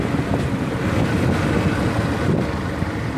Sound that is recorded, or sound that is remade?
recorded